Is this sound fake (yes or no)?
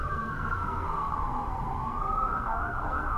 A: yes